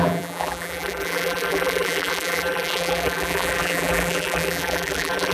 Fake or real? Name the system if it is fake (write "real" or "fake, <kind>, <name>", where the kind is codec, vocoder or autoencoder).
fake, vocoder, BigVGAN v2